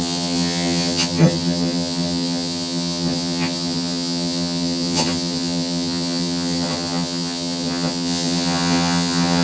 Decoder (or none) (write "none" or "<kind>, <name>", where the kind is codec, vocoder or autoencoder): vocoder, HiFi-GAN